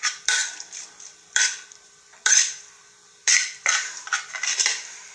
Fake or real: fake